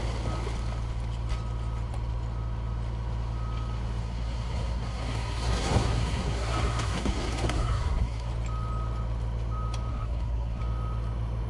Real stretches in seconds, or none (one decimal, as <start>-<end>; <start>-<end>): 0.0-4.0; 8.3-9.9; 10.6-11.5

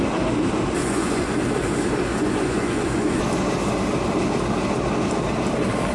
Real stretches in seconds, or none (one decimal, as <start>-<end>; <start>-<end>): 0.0-0.8; 1.3-2.1; 3.2-5.9